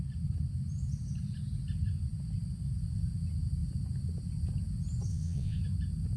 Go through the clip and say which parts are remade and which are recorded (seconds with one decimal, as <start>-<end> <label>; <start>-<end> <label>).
0.0-5.1 recorded; 5.1-5.6 remade; 5.6-6.2 recorded